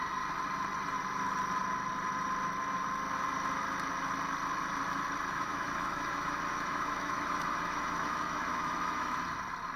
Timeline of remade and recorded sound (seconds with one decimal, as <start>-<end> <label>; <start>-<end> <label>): 0.0-5.3 recorded; 5.3-9.2 remade; 9.2-9.8 recorded